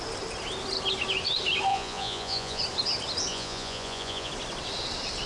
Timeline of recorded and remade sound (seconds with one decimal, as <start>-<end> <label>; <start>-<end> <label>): 0.0-1.7 recorded; 1.7-2.6 remade; 2.6-3.3 recorded; 3.3-4.3 remade; 4.3-5.3 recorded